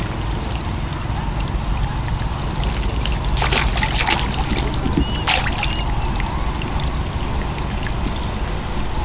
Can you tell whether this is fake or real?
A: real